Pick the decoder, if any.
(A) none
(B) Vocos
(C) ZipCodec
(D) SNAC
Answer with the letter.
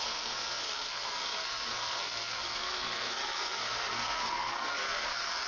D